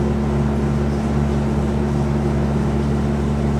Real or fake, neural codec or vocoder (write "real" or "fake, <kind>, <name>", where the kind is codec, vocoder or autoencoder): real